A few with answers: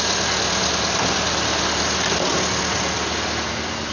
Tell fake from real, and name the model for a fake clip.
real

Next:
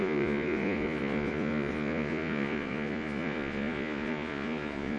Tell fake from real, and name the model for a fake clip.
fake, vocoder, Vocos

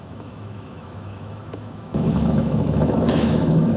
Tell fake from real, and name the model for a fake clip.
fake, autoencoder, DAC-VAE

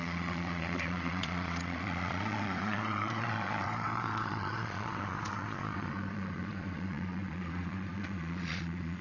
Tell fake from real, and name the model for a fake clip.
fake, vocoder, Vocos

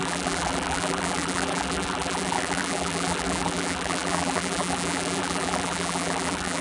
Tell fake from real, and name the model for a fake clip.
fake, vocoder, BigVGAN v2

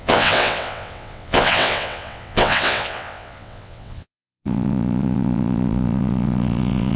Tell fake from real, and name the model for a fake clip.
fake, vocoder, WaveNeXt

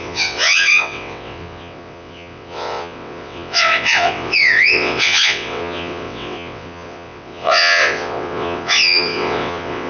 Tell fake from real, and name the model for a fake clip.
fake, vocoder, WaveNeXt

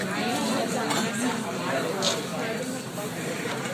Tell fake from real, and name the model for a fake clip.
real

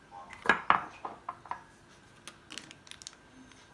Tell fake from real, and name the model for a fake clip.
real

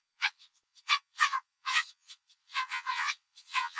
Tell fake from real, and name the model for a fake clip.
fake, vocoder, WaveNeXt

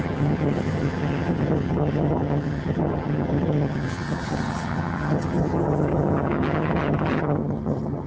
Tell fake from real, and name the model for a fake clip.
fake, vocoder, HiFi-GAN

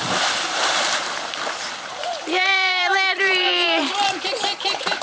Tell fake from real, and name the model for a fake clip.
fake, vocoder, BigVGAN v2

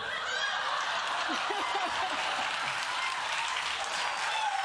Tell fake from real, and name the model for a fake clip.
real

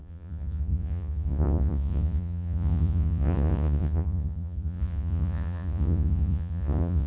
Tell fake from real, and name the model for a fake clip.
fake, vocoder, Vocos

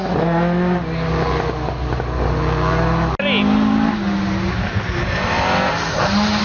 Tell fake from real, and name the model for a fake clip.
real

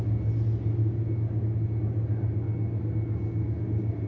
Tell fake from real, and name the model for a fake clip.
real